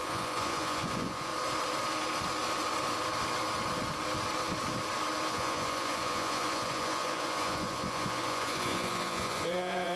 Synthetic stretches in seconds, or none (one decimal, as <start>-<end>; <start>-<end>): 0.0-1.3; 5.3-10.0